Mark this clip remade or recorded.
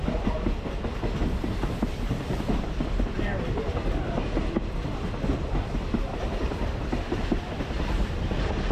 remade